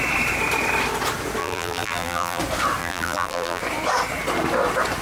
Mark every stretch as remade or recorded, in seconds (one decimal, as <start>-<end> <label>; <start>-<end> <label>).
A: 0.0-1.4 recorded; 1.4-2.4 remade; 2.4-2.8 recorded; 2.8-3.6 remade; 3.6-5.0 recorded